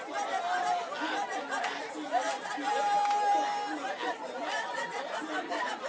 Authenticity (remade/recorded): recorded